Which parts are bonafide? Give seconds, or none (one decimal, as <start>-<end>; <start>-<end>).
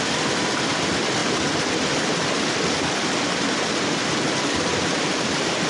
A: 0.0-5.7